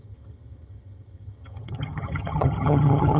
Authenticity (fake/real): fake